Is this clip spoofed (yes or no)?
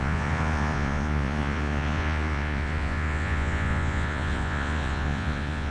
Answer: yes